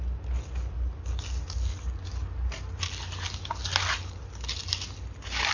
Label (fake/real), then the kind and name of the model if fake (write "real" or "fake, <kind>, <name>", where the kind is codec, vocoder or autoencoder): real